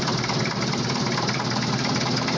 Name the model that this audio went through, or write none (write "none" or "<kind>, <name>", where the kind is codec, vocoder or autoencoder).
none